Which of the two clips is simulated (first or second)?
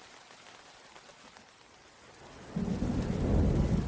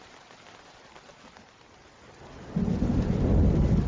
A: second